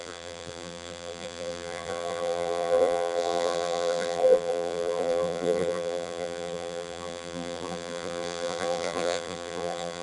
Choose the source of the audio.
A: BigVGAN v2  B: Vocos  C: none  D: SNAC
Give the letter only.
A